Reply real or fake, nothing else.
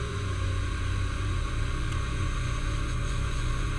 fake